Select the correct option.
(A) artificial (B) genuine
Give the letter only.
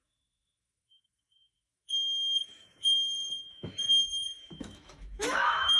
A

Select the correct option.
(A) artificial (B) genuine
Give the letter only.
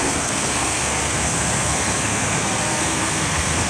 A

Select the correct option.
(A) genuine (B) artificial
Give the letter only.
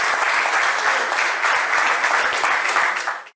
A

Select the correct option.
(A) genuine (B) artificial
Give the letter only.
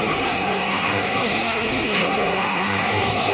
B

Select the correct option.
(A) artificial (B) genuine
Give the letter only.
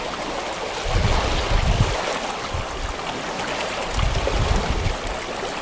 B